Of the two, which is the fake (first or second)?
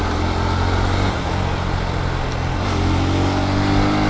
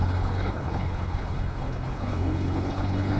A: second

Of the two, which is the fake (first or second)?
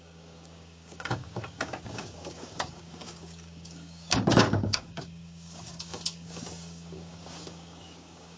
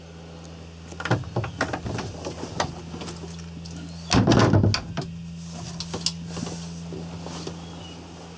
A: first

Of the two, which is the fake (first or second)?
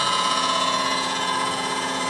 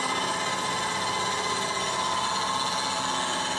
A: first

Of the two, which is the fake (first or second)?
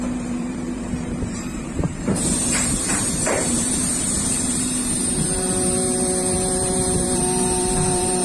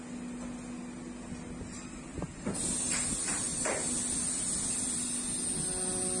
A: first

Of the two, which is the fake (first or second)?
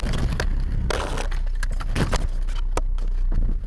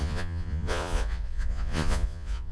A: second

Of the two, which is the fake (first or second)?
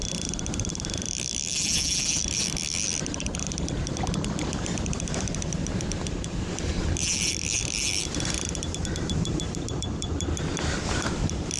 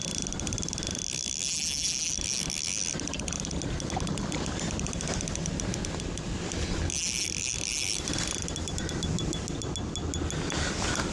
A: first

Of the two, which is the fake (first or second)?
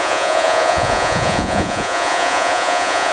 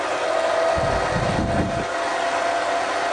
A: first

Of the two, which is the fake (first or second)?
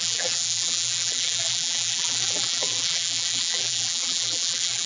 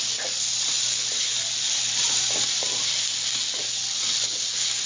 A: first